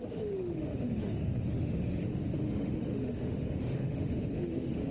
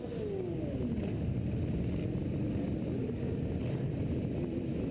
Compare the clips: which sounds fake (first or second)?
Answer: first